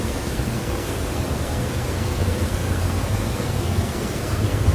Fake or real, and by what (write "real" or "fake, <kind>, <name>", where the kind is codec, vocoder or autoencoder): fake, codec, SNAC